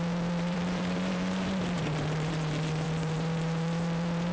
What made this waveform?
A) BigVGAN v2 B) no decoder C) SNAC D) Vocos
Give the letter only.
A